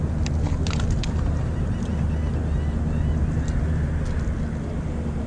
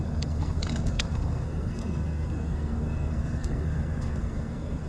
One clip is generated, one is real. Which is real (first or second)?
first